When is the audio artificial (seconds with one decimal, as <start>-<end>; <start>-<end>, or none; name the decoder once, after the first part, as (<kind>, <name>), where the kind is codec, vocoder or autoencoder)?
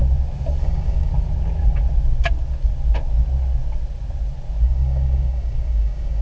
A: 0.6-1.1 (codec, DAC); 4.6-6.2